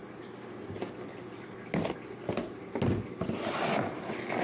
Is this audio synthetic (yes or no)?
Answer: no